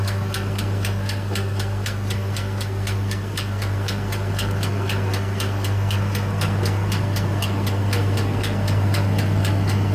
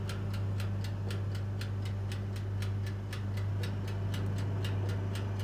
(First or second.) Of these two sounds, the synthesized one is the first